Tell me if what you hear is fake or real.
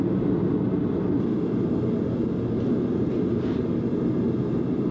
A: real